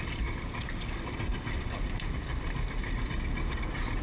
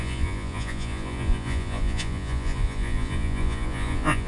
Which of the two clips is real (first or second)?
first